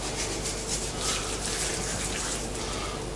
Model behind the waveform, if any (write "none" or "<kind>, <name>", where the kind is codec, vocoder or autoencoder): none